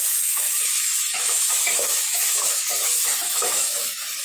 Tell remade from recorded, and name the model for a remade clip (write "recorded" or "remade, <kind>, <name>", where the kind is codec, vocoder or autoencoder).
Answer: remade, autoencoder, DAC-VAE